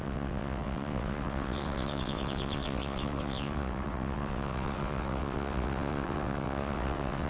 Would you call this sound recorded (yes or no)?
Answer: no